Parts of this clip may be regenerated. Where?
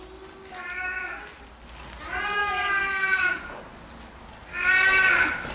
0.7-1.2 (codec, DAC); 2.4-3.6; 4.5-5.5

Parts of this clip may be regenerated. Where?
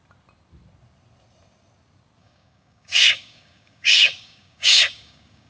2.2-5.5 (codec, DAC)